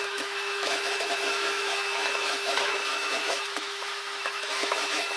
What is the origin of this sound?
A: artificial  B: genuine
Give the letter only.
A